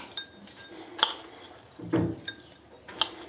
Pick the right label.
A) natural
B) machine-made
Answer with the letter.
A